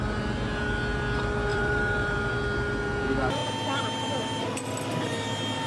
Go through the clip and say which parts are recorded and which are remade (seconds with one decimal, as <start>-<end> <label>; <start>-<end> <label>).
0.0-1.5 recorded; 1.5-2.3 remade; 2.3-5.7 recorded